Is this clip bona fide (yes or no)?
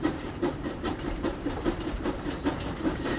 no